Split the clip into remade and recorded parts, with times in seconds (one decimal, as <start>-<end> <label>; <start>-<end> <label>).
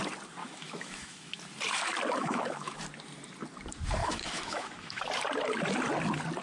0.0-0.4 recorded; 0.4-1.4 remade; 1.4-2.2 recorded; 2.2-2.8 remade; 2.8-4.0 recorded; 4.0-5.0 remade; 5.0-6.4 recorded